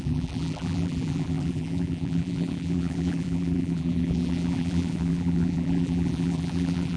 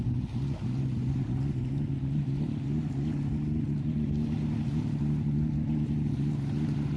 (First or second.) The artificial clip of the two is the first